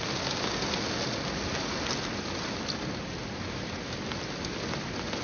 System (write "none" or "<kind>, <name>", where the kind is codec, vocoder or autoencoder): none